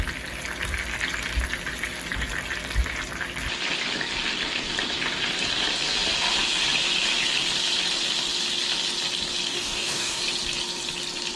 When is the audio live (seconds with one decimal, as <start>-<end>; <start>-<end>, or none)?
0.0-9.5; 10.2-11.4